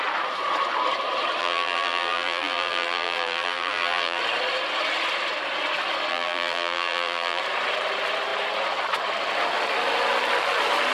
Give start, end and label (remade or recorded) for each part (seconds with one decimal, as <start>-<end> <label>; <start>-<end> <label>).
0.0-1.4 recorded; 1.4-4.2 remade; 4.2-6.1 recorded; 6.1-7.4 remade; 7.4-10.9 recorded